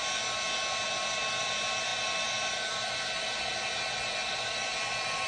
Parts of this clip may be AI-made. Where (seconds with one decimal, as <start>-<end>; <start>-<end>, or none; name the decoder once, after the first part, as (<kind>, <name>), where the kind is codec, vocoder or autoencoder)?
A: 1.4-5.3 (vocoder, BigVGAN v2)